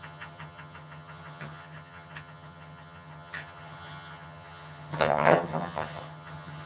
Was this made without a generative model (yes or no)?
no